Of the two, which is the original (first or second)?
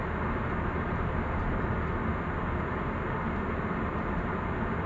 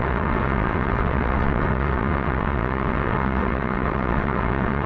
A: first